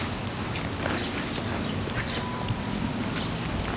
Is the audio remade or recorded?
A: recorded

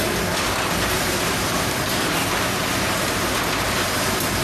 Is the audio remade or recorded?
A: recorded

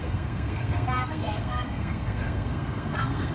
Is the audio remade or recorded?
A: remade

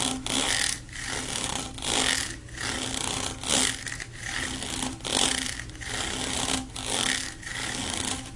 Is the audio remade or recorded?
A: recorded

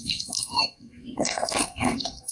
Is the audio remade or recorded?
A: remade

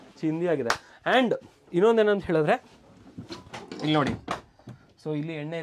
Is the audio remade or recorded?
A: recorded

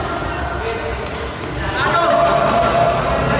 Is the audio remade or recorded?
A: recorded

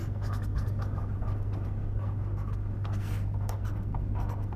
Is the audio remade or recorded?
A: remade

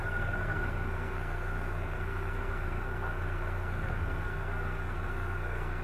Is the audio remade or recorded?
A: remade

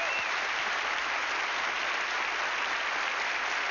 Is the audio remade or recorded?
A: recorded